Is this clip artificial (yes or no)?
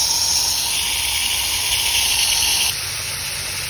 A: no